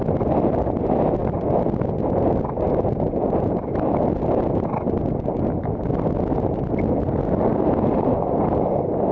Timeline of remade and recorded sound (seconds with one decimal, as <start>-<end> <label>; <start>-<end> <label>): 0.0-9.1 recorded

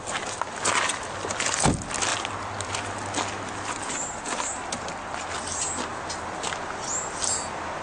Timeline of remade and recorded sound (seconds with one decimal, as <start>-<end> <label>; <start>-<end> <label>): 0.0-7.8 recorded

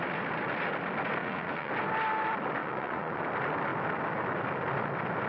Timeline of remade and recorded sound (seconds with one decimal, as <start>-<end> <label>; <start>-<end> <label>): 0.0-1.2 recorded; 1.2-1.7 remade; 1.7-2.6 recorded; 2.6-3.2 remade; 3.2-5.3 recorded

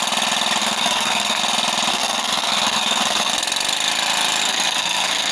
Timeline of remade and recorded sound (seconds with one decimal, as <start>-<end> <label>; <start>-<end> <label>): 0.0-0.6 recorded; 0.6-1.4 remade; 1.4-1.9 recorded; 1.9-3.3 remade; 3.3-4.4 recorded; 4.4-5.3 remade